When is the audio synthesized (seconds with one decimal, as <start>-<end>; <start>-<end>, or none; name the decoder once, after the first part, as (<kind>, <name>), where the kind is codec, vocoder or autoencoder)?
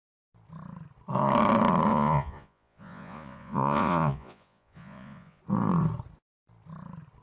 1.9-5.4 (vocoder, Vocos)